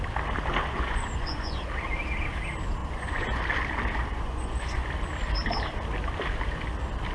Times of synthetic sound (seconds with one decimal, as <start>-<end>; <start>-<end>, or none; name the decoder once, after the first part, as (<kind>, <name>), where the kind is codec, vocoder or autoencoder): 0.7-1.6 (vocoder, Vocos); 2.8-3.4; 4.1-4.9

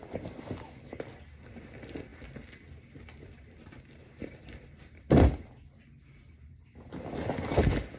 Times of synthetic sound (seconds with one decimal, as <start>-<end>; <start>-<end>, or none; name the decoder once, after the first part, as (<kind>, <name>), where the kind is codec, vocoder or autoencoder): none

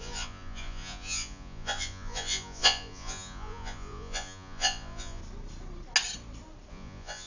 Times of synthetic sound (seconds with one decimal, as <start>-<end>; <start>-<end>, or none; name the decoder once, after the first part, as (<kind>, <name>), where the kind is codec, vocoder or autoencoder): 0.0-5.2 (vocoder, Vocos); 6.7-7.3

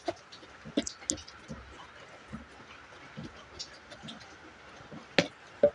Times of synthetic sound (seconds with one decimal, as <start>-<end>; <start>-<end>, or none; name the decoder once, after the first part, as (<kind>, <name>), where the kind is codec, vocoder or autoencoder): none

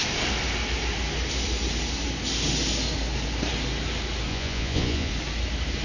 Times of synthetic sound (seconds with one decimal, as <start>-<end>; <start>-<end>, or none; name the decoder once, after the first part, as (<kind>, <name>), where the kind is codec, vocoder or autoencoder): 4.3-5.1 (vocoder, Vocos)

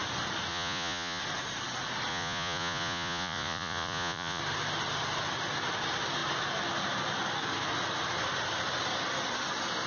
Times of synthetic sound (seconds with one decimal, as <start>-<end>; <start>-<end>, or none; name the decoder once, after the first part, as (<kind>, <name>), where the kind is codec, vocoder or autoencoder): 0.5-1.2 (vocoder, Vocos); 2.1-4.4